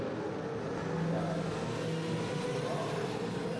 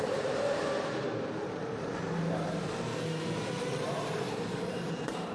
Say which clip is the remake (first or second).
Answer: second